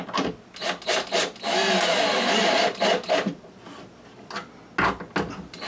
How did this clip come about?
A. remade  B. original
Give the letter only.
B